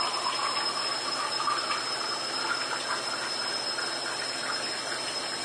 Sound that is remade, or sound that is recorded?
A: recorded